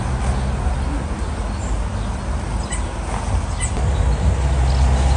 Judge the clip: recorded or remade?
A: recorded